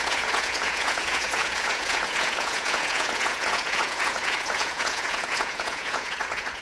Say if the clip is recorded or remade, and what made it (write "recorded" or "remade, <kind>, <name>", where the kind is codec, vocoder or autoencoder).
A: remade, vocoder, Vocos